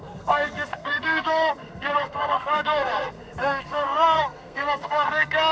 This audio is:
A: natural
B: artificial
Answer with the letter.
B